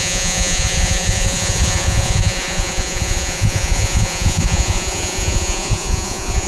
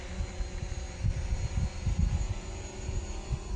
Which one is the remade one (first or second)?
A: first